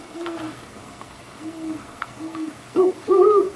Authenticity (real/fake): fake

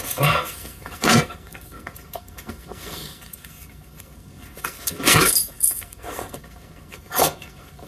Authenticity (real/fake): fake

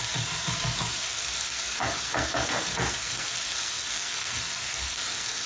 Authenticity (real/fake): fake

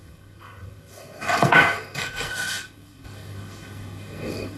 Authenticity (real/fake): fake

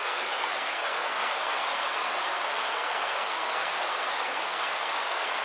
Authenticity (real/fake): fake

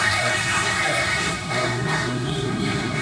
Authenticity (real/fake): fake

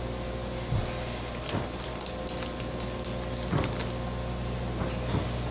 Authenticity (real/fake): real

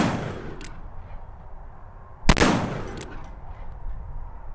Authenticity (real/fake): real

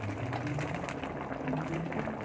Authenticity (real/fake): real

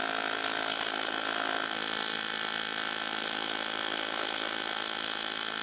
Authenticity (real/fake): real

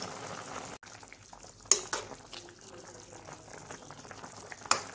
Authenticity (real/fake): real